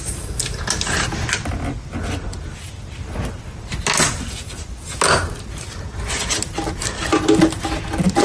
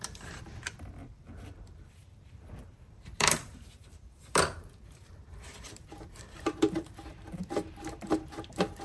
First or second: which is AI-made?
second